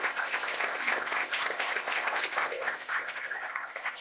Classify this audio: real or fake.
fake